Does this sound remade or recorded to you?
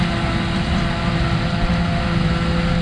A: recorded